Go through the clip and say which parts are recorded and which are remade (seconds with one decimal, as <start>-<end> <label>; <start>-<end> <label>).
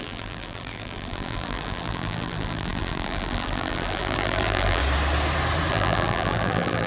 0.0-4.8 remade; 4.8-5.7 recorded; 5.7-6.9 remade